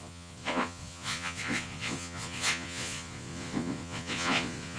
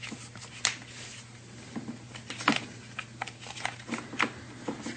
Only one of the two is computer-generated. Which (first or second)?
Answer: first